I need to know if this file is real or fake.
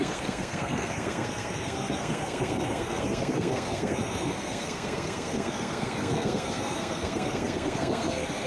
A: fake